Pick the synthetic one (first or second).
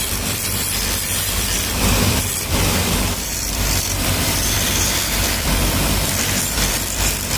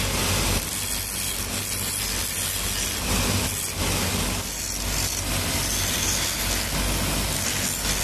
first